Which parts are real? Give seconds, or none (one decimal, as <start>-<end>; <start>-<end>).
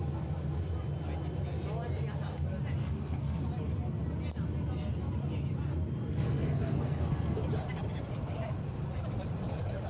0.0-2.8; 3.4-6.1; 7.4-9.9